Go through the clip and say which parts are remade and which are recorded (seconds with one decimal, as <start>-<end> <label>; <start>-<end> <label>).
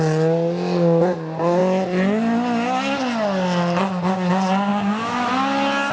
0.0-5.9 recorded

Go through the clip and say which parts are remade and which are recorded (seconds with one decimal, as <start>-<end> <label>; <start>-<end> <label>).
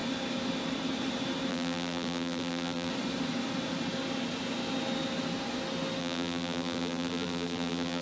0.0-1.5 recorded; 1.5-2.9 remade; 2.9-6.0 recorded; 6.0-8.0 remade